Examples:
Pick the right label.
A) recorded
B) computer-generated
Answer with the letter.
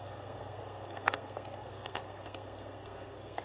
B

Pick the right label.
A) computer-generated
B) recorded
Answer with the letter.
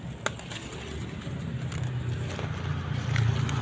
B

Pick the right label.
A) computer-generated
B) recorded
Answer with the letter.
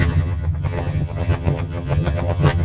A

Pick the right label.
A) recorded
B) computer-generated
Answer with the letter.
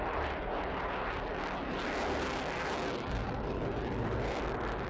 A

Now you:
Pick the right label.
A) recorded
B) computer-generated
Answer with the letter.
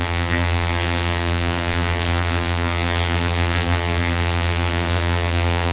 B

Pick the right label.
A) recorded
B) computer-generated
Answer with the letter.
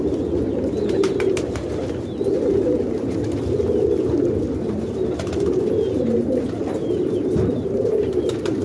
A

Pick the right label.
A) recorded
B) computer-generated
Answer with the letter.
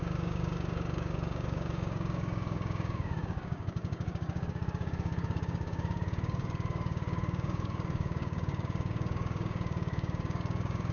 B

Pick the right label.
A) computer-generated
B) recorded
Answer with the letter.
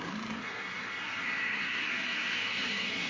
A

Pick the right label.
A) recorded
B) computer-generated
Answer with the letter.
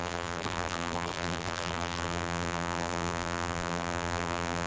B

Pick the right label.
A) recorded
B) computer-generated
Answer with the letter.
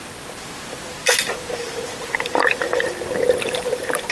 B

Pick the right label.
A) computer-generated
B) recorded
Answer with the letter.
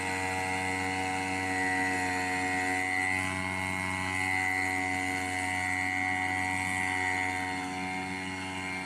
B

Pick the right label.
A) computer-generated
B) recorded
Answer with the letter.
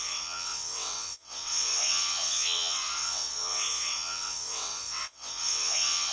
A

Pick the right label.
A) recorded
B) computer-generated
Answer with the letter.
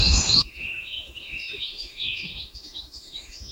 B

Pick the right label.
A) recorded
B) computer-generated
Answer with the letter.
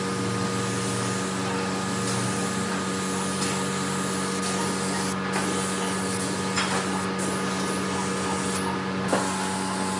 A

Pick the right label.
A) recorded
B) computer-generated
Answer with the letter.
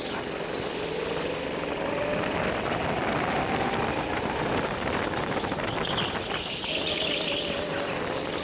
A